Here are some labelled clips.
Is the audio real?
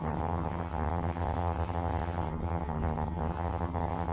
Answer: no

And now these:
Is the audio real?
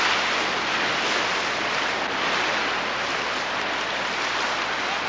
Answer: yes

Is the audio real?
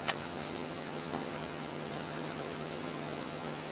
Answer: no